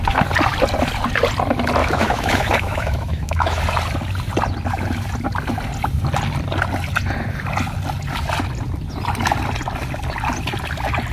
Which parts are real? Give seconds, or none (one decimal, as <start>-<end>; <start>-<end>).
0.0-1.8; 3.6-11.1